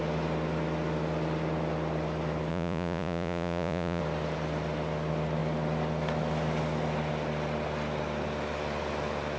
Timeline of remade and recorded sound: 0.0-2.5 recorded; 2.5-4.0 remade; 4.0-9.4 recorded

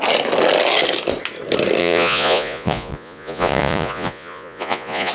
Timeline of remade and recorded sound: 0.0-1.8 recorded; 1.8-5.1 remade

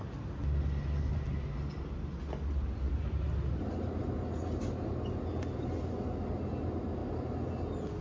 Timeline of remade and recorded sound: 0.0-8.0 recorded

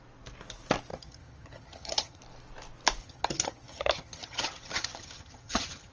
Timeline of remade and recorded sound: 0.0-0.9 recorded; 0.9-2.2 remade; 2.2-3.0 recorded; 3.0-5.9 remade